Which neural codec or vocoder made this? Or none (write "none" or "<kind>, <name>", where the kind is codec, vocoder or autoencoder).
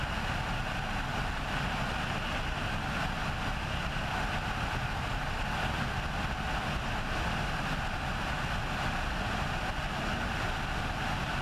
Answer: none